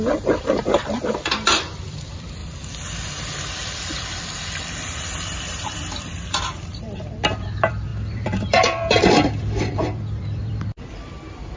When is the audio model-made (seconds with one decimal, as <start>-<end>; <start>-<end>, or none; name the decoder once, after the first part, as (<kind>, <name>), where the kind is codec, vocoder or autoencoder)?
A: 0.0-2.4 (vocoder, BigVGAN v2); 5.0-11.6